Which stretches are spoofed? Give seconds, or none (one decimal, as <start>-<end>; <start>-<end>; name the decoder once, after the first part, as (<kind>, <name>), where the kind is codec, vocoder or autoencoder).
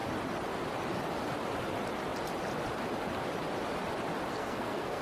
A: 4.3-5.0 (codec, SNAC)